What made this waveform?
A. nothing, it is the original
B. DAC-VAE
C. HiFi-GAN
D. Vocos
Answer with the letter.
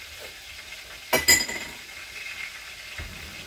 A